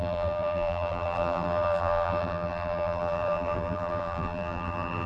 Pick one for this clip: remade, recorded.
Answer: remade